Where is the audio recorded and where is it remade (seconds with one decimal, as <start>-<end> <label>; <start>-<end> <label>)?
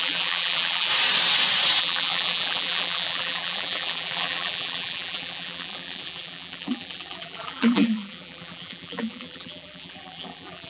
0.0-0.9 remade; 0.9-1.8 recorded; 1.8-10.7 remade